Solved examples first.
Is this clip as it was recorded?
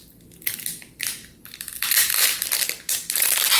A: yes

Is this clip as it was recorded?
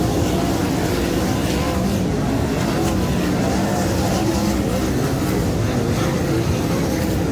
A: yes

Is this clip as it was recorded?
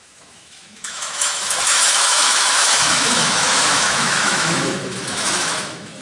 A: no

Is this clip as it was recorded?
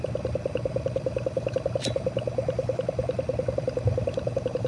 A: yes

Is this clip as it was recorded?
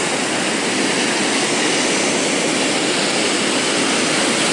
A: yes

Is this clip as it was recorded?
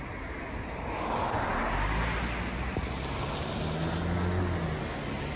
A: yes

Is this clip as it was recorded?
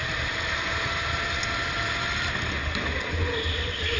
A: yes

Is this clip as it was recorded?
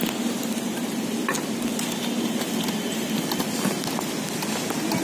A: yes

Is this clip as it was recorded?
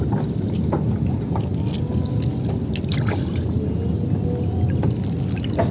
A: yes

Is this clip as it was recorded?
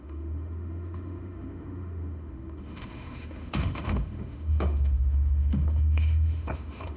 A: no